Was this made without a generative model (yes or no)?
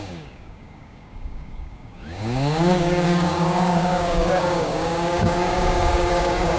no